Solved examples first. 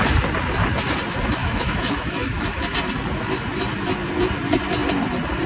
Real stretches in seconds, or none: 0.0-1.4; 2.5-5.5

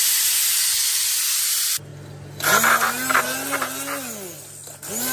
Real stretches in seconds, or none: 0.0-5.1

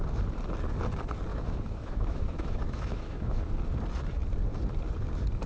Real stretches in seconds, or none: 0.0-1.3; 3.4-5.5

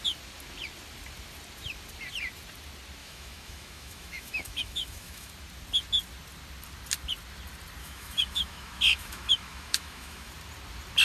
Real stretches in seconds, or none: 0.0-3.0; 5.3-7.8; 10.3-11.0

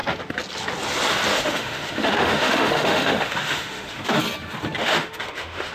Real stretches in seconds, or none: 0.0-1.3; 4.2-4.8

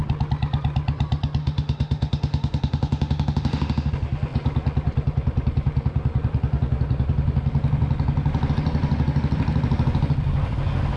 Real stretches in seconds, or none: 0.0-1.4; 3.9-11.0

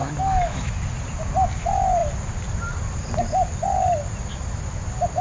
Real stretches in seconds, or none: 0.7-5.2